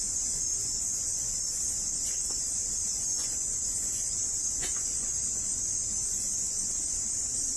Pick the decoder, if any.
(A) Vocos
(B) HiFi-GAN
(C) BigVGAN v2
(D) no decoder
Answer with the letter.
A